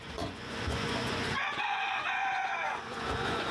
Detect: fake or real fake